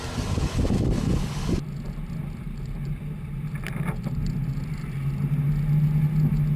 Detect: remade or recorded recorded